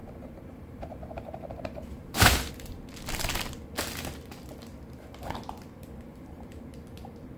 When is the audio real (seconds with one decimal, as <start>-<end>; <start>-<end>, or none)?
2.5-6.1; 6.6-7.4